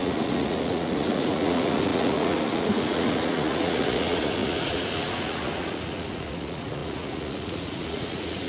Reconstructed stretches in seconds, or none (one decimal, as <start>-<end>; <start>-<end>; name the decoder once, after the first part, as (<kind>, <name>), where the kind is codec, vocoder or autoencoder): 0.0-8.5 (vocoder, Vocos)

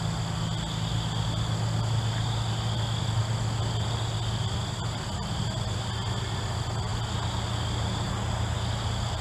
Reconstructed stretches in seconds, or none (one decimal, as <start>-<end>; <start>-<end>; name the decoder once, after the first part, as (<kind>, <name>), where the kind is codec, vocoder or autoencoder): none

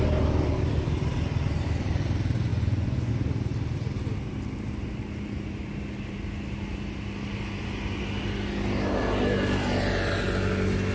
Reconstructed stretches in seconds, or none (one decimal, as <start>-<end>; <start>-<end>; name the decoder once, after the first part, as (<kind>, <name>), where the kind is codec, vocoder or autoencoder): 2.5-3.1 (vocoder, Vocos)